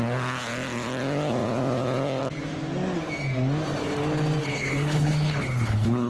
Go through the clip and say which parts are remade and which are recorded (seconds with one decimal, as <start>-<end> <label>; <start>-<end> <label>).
0.0-4.4 recorded; 4.4-6.1 remade